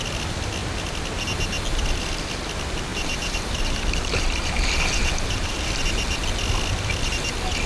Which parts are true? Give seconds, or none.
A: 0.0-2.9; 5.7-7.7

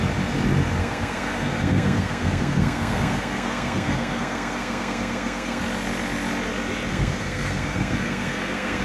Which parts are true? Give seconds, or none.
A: 0.0-0.8; 5.6-6.9

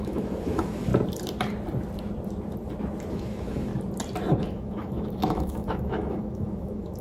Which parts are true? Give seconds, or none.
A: 0.9-3.1; 3.7-4.4